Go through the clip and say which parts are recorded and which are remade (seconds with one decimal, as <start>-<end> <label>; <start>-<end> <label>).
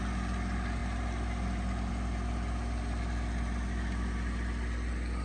0.0-5.2 recorded